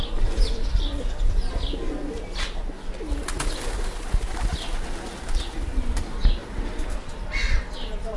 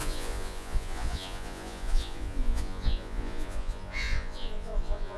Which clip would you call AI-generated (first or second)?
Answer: second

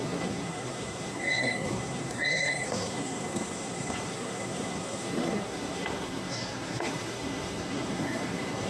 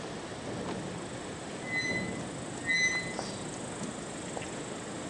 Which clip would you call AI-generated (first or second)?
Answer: first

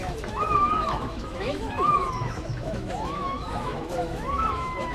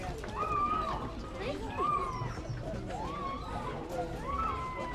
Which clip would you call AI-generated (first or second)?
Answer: first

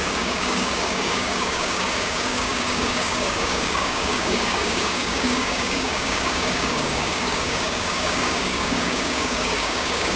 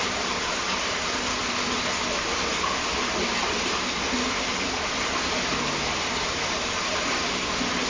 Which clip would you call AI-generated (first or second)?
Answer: first